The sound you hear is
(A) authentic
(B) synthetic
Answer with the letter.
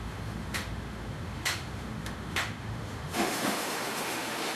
B